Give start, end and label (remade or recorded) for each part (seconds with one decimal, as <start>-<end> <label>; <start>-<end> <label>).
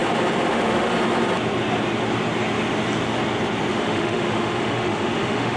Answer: 0.0-0.5 recorded; 0.5-0.9 remade; 0.9-3.7 recorded; 3.7-5.6 remade